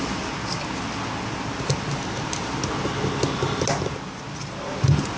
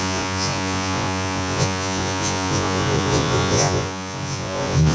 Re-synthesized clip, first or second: second